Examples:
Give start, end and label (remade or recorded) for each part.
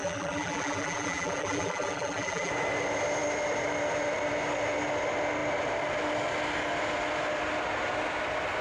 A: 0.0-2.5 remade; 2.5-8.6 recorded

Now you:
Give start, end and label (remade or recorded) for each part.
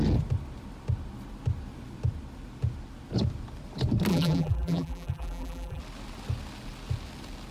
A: 0.0-4.1 recorded; 4.1-5.8 remade; 5.8-7.5 recorded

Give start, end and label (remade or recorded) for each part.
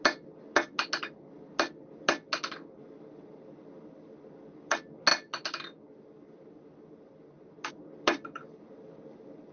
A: 0.0-9.5 recorded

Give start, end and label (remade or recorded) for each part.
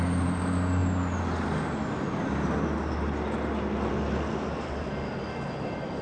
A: 0.0-6.0 recorded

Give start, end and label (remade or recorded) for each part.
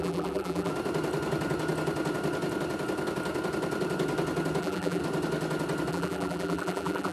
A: 0.0-0.7 remade; 0.7-4.6 recorded; 4.6-5.0 remade; 5.0-5.9 recorded; 5.9-7.1 remade